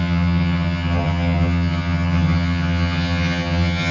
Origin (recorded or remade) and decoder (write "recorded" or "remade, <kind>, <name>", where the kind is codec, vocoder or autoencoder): remade, vocoder, HiFi-GAN